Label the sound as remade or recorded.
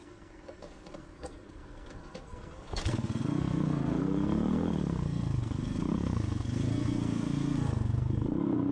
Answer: remade